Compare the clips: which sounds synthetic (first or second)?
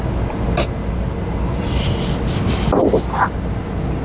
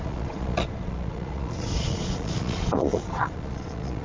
second